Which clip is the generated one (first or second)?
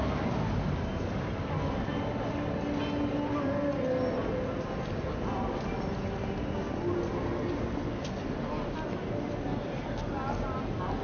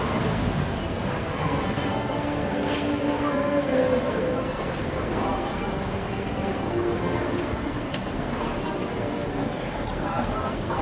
second